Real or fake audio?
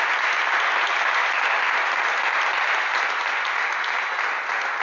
real